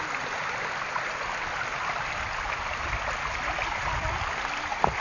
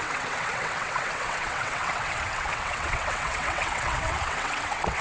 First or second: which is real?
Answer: first